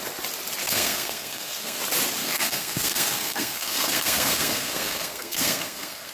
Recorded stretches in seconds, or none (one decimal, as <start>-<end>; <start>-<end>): 0.0-0.6; 1.8-2.2